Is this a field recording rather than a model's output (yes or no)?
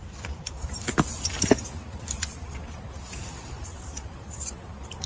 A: no